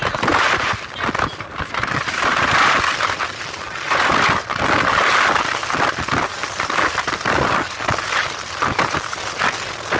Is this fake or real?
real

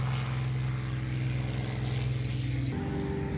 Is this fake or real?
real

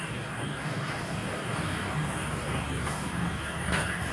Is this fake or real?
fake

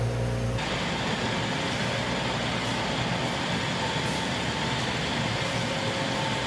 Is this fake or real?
real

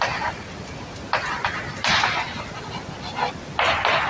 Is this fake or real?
real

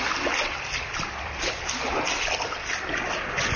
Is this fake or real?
real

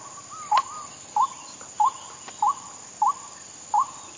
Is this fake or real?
real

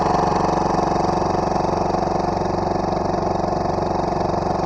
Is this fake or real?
real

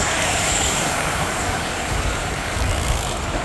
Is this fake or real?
fake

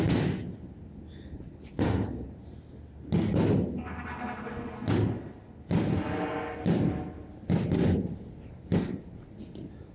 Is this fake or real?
real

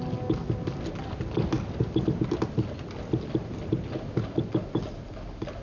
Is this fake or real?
real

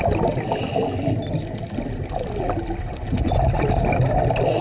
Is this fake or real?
real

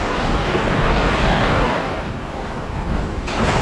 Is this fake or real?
fake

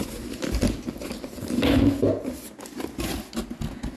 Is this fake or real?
real